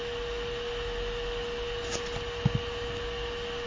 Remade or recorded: recorded